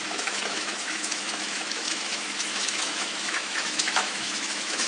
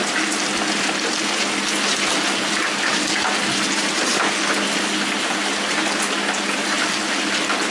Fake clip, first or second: first